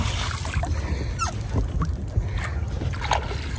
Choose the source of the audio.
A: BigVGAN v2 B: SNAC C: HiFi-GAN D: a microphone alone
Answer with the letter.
D